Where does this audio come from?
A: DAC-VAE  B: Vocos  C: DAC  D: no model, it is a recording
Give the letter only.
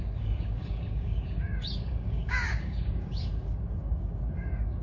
C